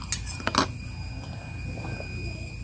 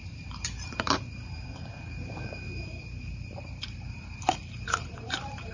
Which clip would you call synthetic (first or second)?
second